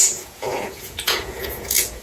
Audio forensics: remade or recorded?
remade